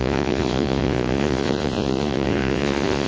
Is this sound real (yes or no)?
no